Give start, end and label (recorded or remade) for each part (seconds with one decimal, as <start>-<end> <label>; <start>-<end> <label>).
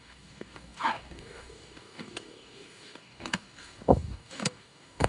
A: 0.0-5.1 remade